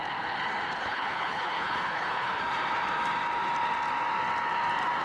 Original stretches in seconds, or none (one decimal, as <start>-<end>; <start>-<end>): 0.0-0.8; 2.4-5.0